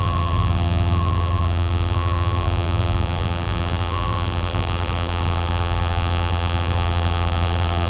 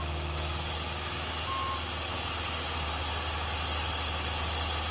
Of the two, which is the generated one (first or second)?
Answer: first